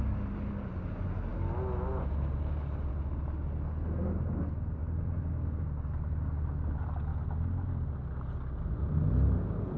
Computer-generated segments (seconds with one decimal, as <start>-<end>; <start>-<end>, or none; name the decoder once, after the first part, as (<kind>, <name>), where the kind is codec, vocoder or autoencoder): none